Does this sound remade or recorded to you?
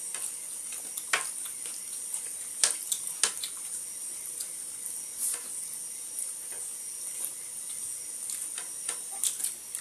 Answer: recorded